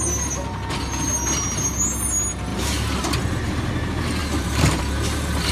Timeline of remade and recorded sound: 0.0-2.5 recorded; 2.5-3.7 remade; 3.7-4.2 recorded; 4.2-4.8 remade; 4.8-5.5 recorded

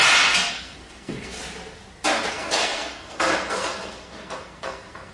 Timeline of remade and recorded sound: 0.0-0.5 recorded; 0.5-1.4 remade; 1.4-2.3 recorded; 2.3-5.1 remade

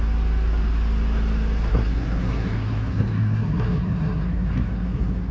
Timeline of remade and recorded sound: 0.0-1.7 recorded; 1.7-5.3 remade

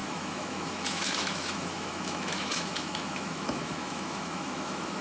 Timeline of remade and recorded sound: 0.0-5.0 remade

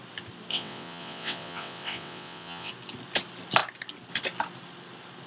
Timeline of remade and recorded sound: 0.0-0.5 recorded; 0.5-2.7 remade; 2.7-5.3 recorded